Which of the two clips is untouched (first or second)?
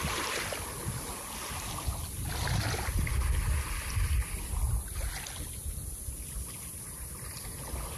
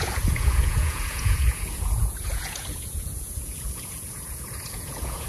first